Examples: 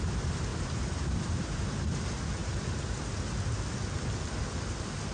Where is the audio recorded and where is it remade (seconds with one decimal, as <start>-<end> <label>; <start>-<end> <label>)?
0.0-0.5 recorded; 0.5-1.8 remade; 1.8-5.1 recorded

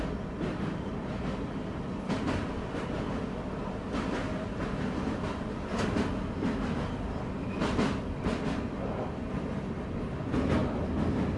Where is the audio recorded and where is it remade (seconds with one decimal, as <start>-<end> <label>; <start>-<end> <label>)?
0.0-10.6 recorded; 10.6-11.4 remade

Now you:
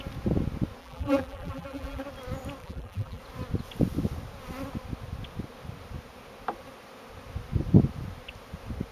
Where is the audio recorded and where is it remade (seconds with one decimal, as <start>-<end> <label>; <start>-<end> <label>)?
0.0-0.8 recorded; 0.8-2.0 remade; 2.0-2.6 recorded; 2.6-3.2 remade; 3.2-8.9 recorded